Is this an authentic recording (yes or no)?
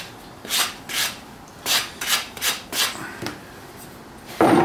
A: no